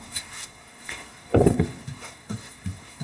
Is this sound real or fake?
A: fake